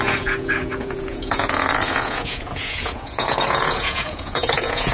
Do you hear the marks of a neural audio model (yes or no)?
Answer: yes